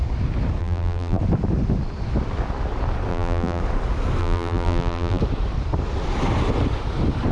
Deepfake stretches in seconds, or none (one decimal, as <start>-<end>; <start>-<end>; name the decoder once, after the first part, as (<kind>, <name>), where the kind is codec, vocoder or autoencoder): 0.6-1.2 (vocoder, BigVGAN v2); 3.1-3.6; 4.2-5.2